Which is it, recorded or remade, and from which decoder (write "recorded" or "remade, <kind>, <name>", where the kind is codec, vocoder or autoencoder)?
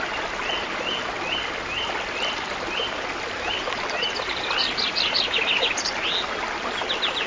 recorded